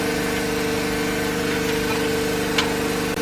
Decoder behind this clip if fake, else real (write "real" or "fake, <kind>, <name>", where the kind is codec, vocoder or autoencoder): real